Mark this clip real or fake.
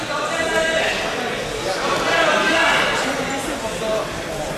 real